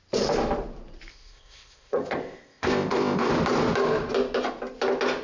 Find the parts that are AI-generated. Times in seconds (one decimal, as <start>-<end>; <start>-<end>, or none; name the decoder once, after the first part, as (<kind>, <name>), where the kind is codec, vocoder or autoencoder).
1.1-3.3 (codec, ZipCodec)